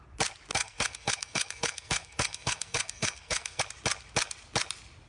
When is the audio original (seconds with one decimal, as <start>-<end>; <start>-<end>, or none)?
0.0-0.5; 3.6-5.1